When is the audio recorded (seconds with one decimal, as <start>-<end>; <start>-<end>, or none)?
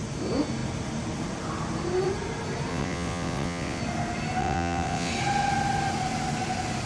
0.0-2.7; 3.8-4.4; 5.1-6.9